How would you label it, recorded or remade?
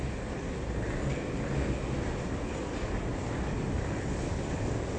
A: recorded